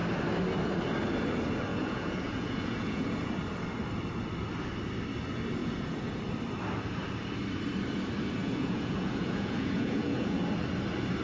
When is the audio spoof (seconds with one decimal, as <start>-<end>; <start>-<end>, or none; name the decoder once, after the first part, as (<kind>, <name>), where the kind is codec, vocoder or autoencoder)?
1.7-3.3 (vocoder, Vocos); 5.6-6.2; 8.4-10.4